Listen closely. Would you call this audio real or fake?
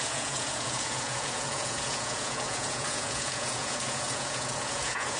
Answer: fake